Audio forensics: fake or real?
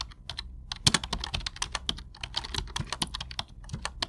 real